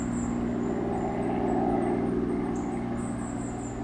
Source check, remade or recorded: recorded